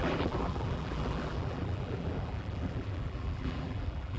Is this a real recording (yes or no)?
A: no